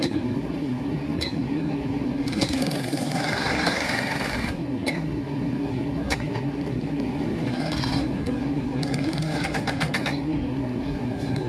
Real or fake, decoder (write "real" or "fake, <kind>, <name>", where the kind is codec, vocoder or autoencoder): fake, codec, SNAC